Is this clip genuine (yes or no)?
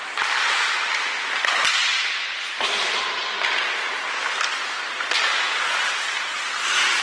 yes